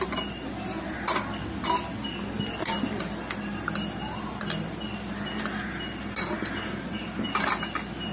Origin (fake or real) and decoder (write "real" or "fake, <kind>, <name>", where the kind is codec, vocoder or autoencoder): real